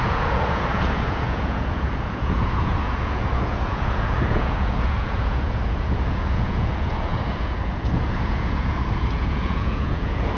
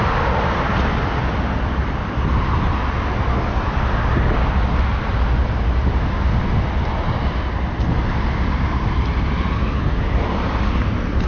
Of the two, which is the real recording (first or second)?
second